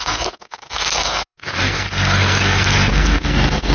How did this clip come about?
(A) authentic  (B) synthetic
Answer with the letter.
B